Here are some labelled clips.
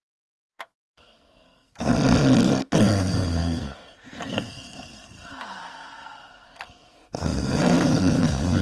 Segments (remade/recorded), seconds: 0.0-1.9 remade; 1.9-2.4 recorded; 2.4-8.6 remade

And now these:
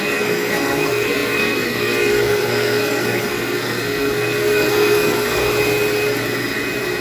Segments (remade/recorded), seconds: 0.0-5.4 remade; 5.4-7.0 recorded

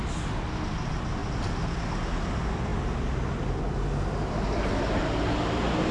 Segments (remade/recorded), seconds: 0.0-5.9 recorded

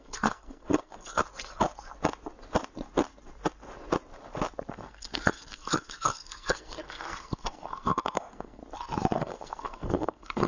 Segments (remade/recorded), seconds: 0.0-1.2 remade; 1.2-4.7 recorded; 4.7-8.6 remade; 8.6-9.2 recorded; 9.2-10.5 remade